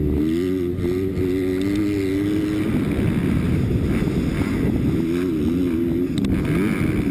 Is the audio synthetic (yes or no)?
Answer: no